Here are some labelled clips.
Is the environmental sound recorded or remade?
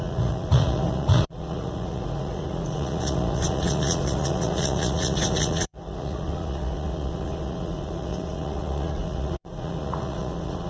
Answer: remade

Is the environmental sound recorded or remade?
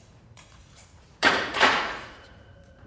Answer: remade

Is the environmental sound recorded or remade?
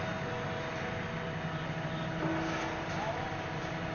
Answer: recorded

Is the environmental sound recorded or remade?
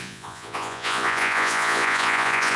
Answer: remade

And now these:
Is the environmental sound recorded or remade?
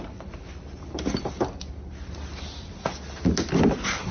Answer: recorded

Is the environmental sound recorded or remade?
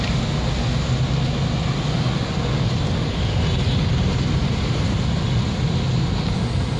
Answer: recorded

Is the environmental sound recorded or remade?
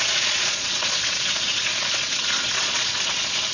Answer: remade